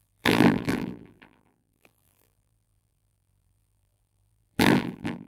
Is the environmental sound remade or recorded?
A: remade